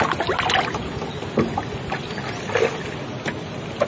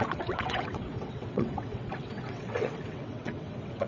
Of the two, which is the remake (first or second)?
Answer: second